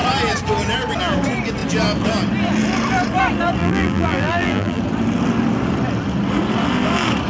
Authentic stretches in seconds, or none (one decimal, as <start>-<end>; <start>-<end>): 0.0-3.6; 4.8-7.3